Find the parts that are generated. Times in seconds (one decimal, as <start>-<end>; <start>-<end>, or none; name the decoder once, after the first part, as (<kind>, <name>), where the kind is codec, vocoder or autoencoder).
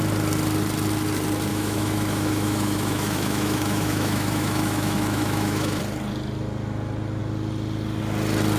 1.5-5.8 (autoencoder, DAC-VAE)